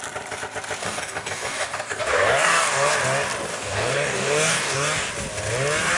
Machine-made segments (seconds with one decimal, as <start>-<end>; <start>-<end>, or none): 0.8-2.9; 3.5-5.1